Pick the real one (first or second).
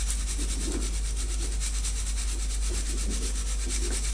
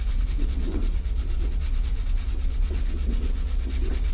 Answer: first